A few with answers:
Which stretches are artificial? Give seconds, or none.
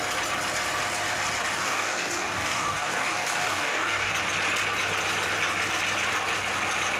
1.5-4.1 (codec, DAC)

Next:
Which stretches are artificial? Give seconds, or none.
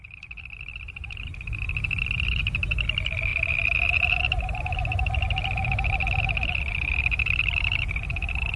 none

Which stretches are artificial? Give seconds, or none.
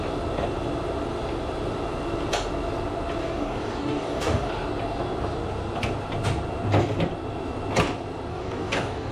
3.2-4.5 (codec, DAC); 8.3-9.1